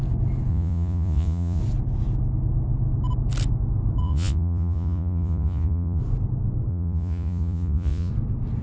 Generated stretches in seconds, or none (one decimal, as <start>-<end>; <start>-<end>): 0.5-1.6; 4.0-6.0; 6.7-8.1